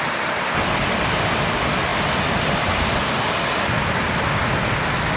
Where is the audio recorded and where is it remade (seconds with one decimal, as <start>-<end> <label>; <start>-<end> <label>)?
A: 0.0-5.2 recorded